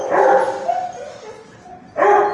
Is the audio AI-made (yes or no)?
no